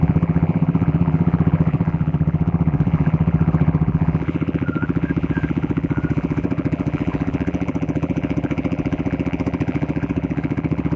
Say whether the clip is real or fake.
fake